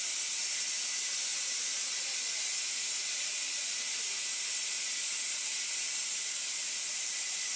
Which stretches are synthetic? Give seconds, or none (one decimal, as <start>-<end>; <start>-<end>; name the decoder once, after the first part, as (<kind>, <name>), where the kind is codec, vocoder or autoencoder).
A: none